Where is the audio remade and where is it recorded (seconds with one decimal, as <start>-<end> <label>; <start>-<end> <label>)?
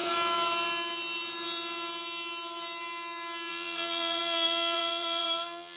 0.0-3.5 recorded; 3.5-5.8 remade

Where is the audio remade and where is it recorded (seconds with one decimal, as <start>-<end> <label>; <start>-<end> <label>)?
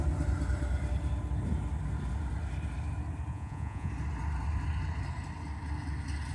0.0-3.3 recorded; 3.3-3.9 remade; 3.9-6.3 recorded